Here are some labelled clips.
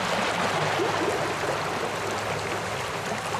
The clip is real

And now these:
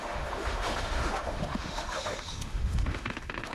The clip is fake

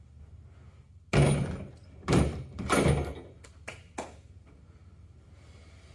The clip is real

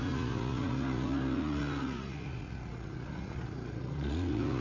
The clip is fake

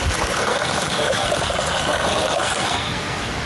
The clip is fake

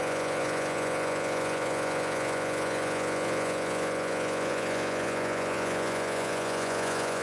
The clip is fake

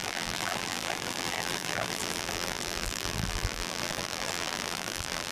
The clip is fake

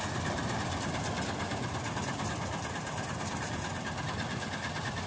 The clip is fake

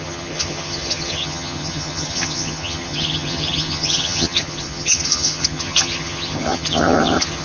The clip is fake